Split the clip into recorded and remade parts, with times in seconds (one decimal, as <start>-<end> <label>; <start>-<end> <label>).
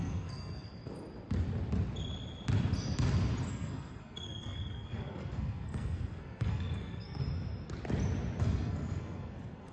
0.0-0.8 remade; 0.8-3.5 recorded; 3.5-7.2 remade; 7.2-8.4 recorded; 8.4-9.7 remade